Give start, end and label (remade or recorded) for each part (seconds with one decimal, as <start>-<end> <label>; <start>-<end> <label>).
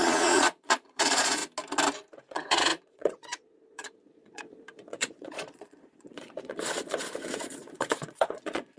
0.0-1.4 remade; 1.4-2.3 recorded; 2.3-8.8 remade